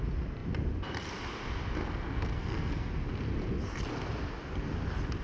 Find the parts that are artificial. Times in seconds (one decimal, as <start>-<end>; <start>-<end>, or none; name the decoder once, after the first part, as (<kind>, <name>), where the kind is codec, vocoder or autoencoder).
1.8-2.9 (codec, SNAC)

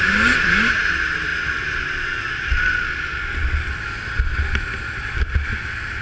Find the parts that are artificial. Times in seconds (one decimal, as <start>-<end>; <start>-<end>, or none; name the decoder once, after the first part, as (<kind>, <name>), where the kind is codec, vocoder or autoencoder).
none

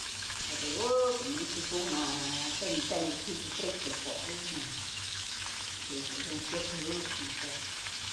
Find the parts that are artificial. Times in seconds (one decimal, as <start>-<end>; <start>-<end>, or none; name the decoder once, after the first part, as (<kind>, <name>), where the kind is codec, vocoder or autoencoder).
0.0-0.7 (autoencoder, DAC-VAE); 1.6-8.1